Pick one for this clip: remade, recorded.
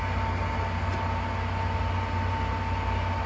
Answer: recorded